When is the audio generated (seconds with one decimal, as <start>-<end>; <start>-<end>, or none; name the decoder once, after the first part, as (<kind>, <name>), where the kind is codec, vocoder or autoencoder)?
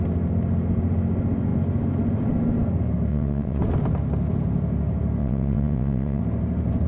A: 3.1-3.6 (vocoder, WaveNeXt); 5.2-6.2